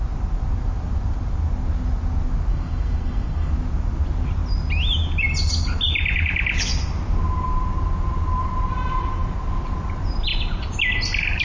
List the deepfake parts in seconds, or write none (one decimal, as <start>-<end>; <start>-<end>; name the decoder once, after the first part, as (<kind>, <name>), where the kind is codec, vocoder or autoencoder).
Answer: 2.5-3.5 (codec, SNAC)